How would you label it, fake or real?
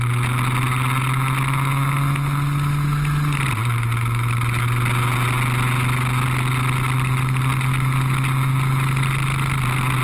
real